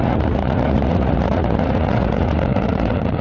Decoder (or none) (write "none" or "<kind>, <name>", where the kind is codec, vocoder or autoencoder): vocoder, Vocos